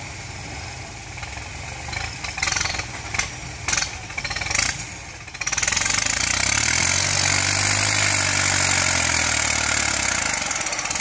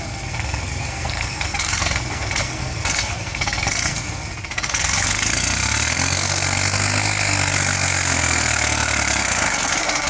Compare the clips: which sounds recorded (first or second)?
first